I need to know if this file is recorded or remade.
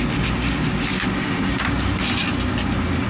recorded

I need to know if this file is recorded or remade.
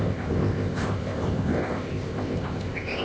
remade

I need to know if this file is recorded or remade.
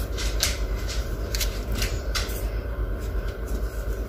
remade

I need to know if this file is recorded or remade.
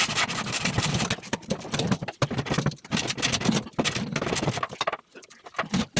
recorded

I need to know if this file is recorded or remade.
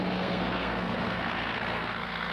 remade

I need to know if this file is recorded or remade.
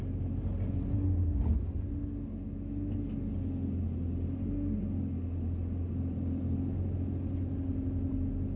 recorded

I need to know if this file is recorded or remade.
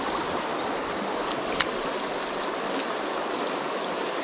recorded